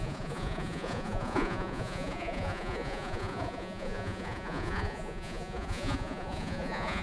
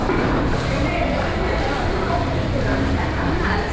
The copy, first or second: first